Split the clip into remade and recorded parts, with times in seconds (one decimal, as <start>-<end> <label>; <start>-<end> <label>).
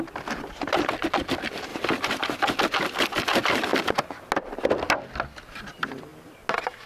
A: 0.0-1.7 recorded; 1.7-2.6 remade; 2.6-6.9 recorded